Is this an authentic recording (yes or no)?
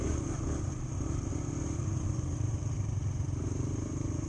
no